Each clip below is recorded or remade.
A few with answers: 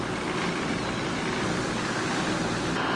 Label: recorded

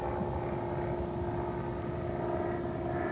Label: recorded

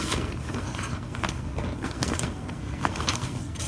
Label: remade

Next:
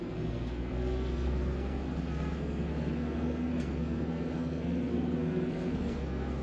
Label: remade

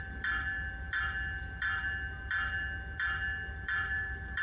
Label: recorded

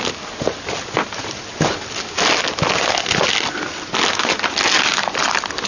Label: recorded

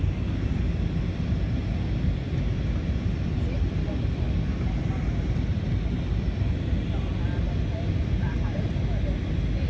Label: recorded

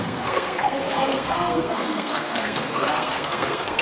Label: remade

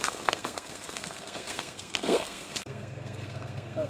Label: remade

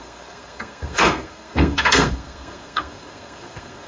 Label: remade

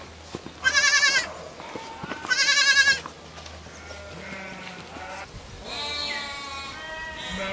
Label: recorded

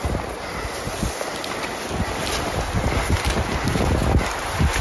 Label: recorded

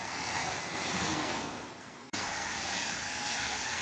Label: remade